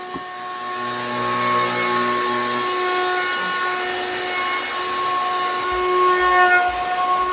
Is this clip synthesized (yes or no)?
no